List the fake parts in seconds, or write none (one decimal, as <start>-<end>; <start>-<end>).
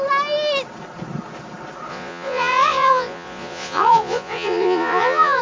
1.9-5.4